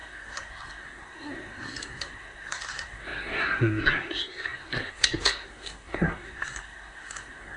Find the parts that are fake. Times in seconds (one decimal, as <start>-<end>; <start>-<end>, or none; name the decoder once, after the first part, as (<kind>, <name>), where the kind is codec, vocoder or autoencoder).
0.0-7.6 (codec, SNAC)